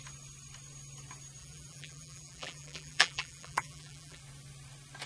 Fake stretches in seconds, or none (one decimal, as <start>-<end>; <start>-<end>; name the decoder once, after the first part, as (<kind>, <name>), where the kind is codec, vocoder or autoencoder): 1.4-4.2 (vocoder, BigVGAN v2)